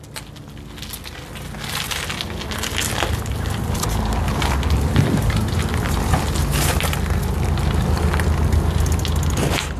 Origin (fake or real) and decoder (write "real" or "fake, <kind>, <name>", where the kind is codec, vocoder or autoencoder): real